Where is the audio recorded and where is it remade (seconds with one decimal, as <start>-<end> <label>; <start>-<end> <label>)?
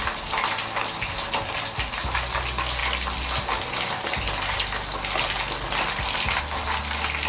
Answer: 0.0-7.3 recorded